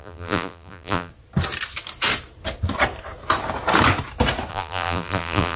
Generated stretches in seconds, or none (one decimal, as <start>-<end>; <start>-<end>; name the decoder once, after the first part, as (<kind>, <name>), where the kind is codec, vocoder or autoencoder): 0.0-1.1 (vocoder, BigVGAN v2); 4.5-5.6